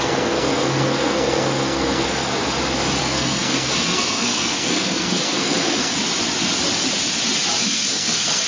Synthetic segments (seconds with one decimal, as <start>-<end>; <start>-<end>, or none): 0.0-2.3; 3.0-6.0; 7.6-8.5